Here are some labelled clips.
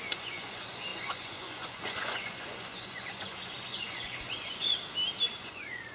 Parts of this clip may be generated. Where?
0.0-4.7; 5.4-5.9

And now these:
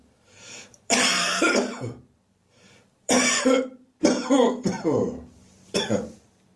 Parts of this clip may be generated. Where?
0.0-6.6

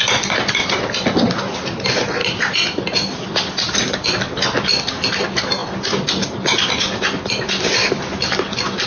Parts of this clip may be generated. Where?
none